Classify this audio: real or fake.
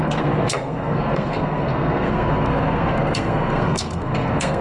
fake